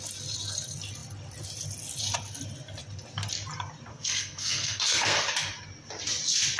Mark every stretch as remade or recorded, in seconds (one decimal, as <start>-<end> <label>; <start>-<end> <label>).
0.0-3.9 recorded; 3.9-5.2 remade; 5.2-6.6 recorded